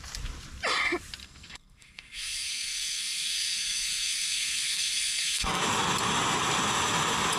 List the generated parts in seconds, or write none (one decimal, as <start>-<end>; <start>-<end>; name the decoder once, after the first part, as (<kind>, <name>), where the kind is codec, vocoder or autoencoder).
1.2-5.6 (codec, SNAC)